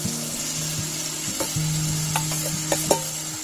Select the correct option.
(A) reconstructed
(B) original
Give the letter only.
B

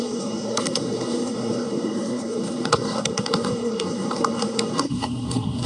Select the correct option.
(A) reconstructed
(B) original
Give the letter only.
A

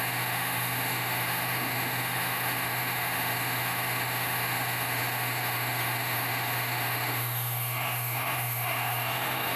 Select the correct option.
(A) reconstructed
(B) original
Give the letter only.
A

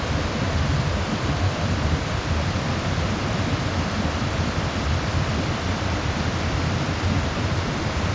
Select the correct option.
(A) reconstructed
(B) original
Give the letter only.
B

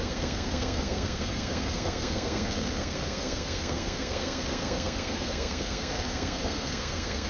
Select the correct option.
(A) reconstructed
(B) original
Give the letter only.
A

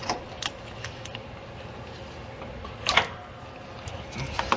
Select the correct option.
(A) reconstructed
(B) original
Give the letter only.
B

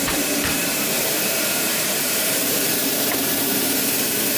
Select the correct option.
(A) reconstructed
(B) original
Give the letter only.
A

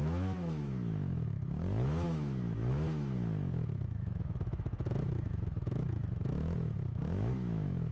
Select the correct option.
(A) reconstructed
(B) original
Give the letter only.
A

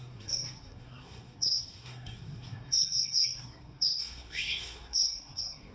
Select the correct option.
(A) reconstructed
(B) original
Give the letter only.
A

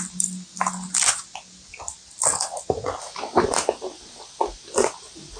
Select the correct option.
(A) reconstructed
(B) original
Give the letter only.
B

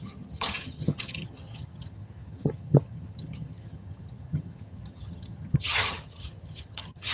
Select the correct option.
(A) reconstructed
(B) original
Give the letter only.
A